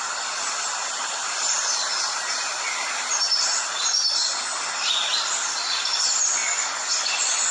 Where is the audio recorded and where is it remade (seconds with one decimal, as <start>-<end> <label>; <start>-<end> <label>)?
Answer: 0.0-6.4 recorded; 6.4-7.5 remade

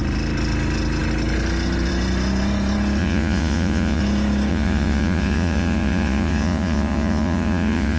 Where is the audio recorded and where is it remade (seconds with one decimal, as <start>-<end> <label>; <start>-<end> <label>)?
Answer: 0.0-3.0 recorded; 3.0-4.0 remade; 4.0-4.5 recorded; 4.5-8.0 remade

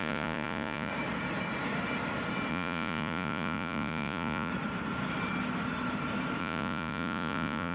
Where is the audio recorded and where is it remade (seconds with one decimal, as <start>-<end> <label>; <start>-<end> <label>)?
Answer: 0.0-0.9 remade; 0.9-2.5 recorded; 2.5-4.5 remade; 4.5-6.4 recorded; 6.4-7.7 remade

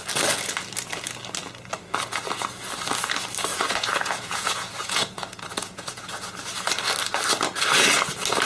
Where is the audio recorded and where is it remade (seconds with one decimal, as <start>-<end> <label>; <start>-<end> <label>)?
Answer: 0.0-3.5 recorded; 3.5-6.4 remade; 6.4-8.5 recorded